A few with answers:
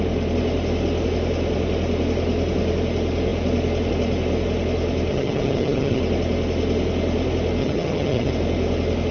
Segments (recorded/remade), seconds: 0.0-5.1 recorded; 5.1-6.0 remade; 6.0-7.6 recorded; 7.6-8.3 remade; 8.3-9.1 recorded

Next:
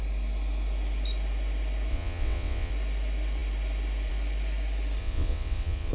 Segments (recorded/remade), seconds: 0.0-1.9 recorded; 1.9-2.7 remade; 2.7-5.0 recorded; 5.0-5.9 remade

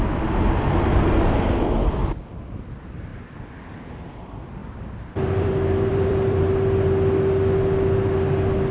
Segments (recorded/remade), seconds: 0.0-4.6 recorded; 4.6-5.5 remade; 5.5-5.9 recorded; 5.9-6.5 remade; 6.5-8.7 recorded

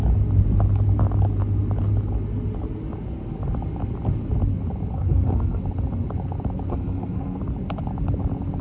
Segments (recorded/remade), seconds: 0.0-4.9 recorded; 4.9-5.6 remade; 5.6-6.7 recorded; 6.7-7.4 remade; 7.4-8.6 recorded

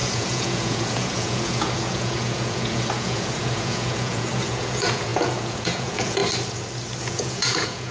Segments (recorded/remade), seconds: 0.0-6.2 remade; 6.2-7.0 recorded; 7.0-7.9 remade